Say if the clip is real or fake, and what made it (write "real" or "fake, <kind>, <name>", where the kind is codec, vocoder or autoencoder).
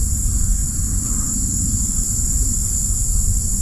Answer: real